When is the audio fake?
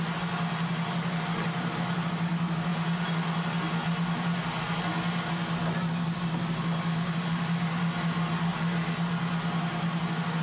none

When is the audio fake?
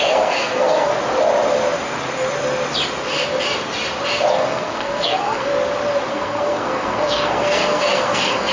0.0-0.9 (codec, SNAC); 4.3-5.5; 6.1-8.5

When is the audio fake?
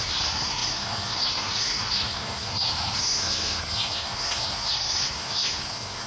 0.0-6.1 (codec, SNAC)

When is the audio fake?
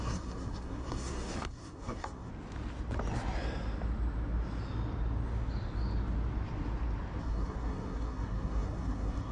0.0-2.3 (codec, SNAC); 7.2-9.3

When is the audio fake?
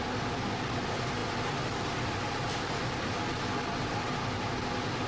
none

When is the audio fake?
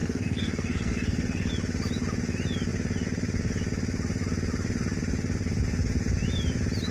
0.0-1.5 (codec, SNAC)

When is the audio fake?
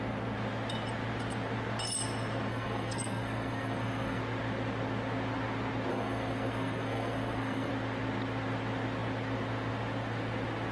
2.5-4.2 (codec, SNAC); 5.9-7.7